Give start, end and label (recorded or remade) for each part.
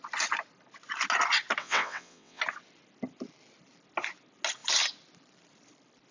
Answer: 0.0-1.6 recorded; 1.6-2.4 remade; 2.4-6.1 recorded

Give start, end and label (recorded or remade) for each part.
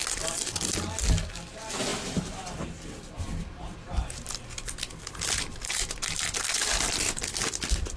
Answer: 0.0-8.0 recorded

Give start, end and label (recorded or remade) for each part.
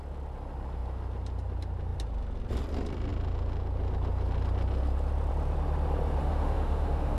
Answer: 0.0-6.2 recorded; 6.2-7.2 remade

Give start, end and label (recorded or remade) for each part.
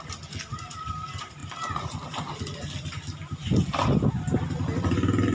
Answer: 0.0-5.3 recorded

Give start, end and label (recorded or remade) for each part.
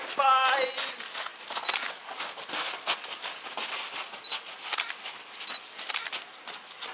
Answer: 0.0-6.9 recorded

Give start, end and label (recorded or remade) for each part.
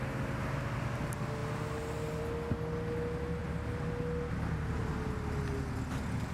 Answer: 0.0-6.3 recorded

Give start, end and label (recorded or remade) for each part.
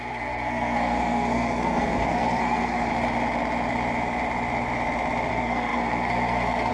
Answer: 0.0-2.9 remade; 2.9-5.3 recorded; 5.3-6.7 remade